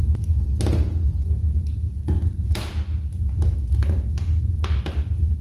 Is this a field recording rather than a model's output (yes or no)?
yes